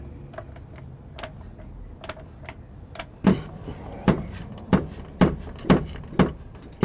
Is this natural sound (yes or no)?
yes